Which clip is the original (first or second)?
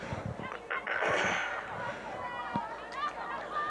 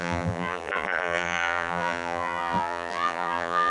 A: first